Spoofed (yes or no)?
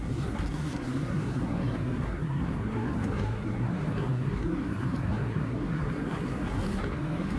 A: yes